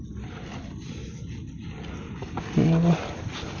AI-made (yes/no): no